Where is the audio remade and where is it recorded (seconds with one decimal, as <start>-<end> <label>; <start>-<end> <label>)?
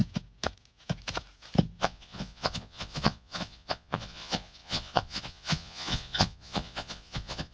0.0-1.8 recorded; 1.8-7.5 remade